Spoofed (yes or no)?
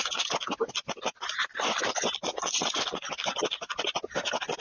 no